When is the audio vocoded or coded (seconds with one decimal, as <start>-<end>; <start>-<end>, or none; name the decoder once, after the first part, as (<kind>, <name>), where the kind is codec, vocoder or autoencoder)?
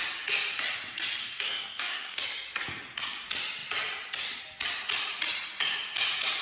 1.2-2.2 (codec, DAC)